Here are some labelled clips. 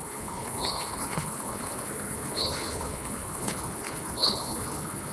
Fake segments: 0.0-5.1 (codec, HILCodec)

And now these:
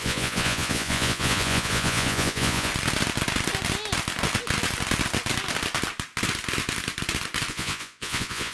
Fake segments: 0.0-2.7 (vocoder, Vocos); 7.5-8.5

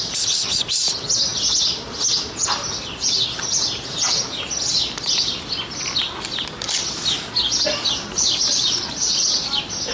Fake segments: 8.1-8.7 (vocoder, BigVGAN v2)